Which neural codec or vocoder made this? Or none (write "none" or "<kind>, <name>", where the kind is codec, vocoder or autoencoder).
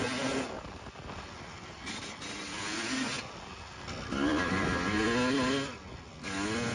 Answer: none